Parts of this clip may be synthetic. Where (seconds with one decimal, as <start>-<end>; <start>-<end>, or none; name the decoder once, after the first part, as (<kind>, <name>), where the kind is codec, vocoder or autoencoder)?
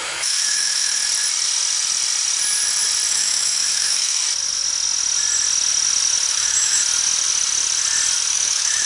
0.0-1.0 (autoencoder, DAC-VAE); 3.1-4.2; 6.3-6.8; 8.3-8.9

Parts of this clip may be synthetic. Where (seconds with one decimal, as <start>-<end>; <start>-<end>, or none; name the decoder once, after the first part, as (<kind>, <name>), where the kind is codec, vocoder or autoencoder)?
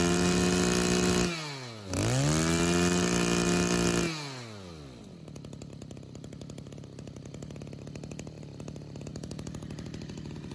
9.1-10.5 (vocoder, BigVGAN v2)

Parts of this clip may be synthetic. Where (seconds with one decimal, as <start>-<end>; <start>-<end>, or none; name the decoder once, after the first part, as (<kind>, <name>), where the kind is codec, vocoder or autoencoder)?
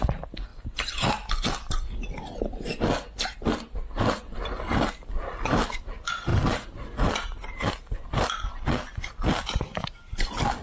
none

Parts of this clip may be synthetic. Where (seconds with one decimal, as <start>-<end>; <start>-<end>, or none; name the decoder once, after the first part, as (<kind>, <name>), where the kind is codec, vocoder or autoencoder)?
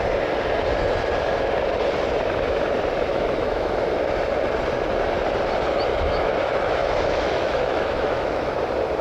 3.1-3.7 (autoencoder, DAC-VAE); 5.9-8.5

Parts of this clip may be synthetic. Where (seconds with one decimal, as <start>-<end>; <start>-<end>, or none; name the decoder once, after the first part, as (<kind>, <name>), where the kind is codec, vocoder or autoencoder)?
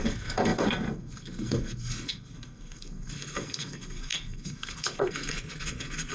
0.0-6.1 (codec, SNAC)